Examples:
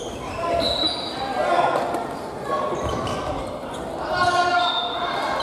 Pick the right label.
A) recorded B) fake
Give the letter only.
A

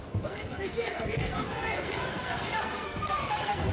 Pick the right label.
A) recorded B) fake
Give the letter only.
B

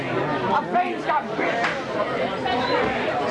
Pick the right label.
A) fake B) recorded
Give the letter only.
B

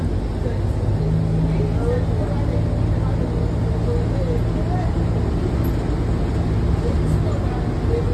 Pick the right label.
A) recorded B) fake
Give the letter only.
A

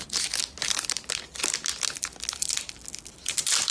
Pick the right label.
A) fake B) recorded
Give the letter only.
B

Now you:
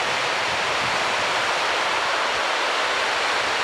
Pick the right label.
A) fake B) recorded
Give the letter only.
B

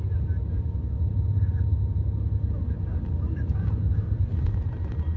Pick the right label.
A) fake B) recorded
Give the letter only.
B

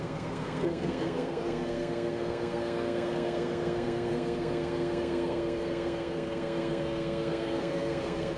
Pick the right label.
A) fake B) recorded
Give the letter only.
A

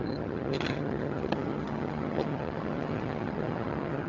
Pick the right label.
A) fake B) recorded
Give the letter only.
A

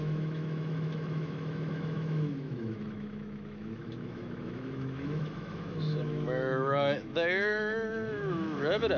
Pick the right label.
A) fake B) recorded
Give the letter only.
A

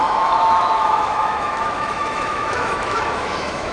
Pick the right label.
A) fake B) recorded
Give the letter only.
A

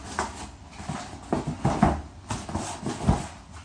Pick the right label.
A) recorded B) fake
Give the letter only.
A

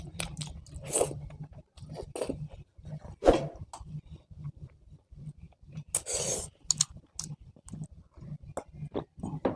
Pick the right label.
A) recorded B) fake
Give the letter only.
A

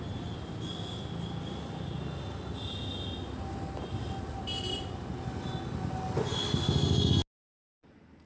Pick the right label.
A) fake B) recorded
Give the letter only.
B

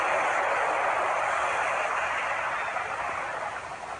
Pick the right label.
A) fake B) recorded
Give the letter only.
B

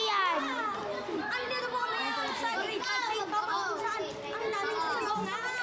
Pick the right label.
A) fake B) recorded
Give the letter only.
B